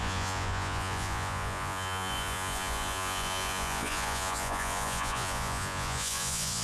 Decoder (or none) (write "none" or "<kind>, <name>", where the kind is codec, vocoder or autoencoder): vocoder, Vocos